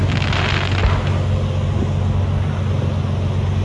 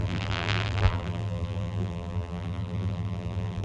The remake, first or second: second